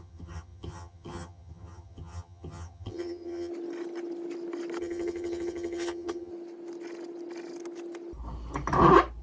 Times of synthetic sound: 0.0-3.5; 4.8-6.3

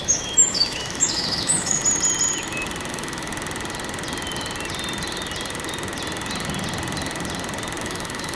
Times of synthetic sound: 0.0-1.8; 2.9-3.3; 7.8-8.4